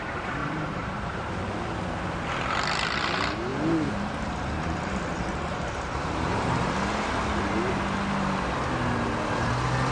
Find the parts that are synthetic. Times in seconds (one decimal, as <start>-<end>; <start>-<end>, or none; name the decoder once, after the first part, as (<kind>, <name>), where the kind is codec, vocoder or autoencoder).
0.4-1.2 (vocoder, BigVGAN v2); 3.5-7.1